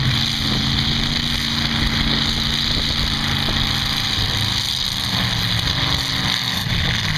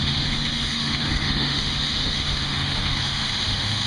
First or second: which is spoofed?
second